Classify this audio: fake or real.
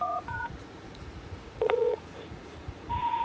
fake